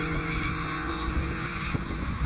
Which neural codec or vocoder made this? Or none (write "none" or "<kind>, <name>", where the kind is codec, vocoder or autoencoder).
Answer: vocoder, Vocos